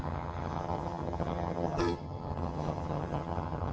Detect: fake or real fake